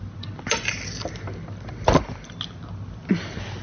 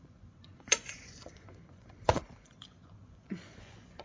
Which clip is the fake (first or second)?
second